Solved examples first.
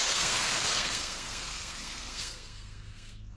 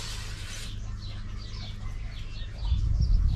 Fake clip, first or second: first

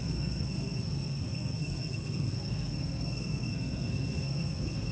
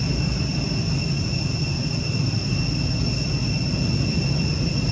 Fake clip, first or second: first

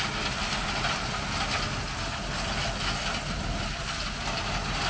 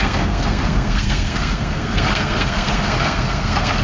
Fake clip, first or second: second